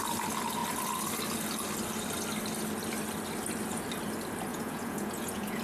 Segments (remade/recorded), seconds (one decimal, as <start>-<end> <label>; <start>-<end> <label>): 0.0-4.5 recorded; 4.5-5.6 remade